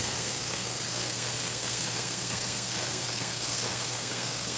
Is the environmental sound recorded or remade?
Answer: remade